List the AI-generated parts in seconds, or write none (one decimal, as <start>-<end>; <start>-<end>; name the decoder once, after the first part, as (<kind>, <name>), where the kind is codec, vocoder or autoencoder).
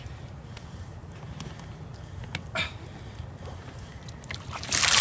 none